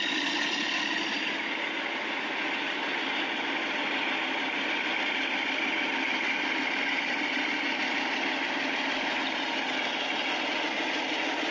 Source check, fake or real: real